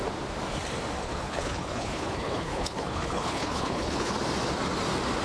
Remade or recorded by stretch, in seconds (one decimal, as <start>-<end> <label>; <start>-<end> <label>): 0.0-1.0 recorded; 1.0-4.1 remade; 4.1-5.2 recorded